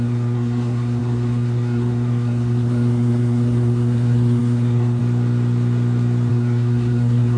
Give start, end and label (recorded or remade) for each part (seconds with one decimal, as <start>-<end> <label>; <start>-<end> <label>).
0.0-5.0 remade; 5.0-6.3 recorded; 6.3-7.4 remade